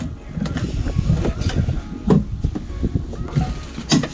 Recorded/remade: recorded